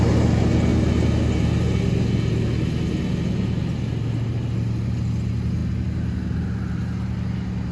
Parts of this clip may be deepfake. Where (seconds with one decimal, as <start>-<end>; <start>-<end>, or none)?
none